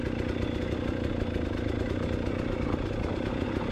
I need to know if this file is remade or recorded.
recorded